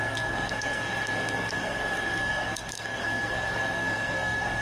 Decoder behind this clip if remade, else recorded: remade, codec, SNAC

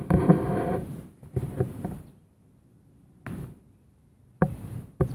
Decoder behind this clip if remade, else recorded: recorded